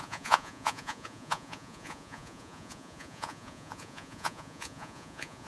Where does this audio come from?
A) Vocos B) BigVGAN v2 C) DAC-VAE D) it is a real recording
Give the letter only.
A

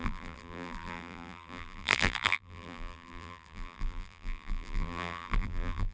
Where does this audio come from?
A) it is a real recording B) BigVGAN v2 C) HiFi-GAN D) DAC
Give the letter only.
B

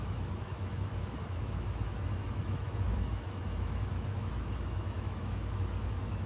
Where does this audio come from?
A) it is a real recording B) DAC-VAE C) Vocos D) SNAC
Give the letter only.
B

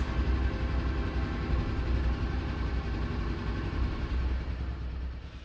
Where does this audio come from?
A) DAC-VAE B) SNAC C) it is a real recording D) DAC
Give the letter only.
C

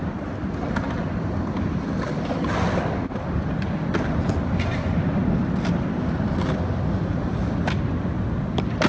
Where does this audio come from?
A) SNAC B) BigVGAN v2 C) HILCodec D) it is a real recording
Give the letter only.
D